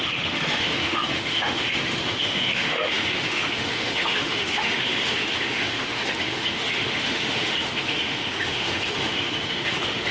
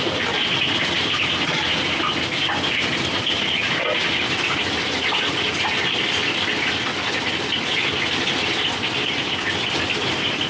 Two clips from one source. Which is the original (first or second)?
second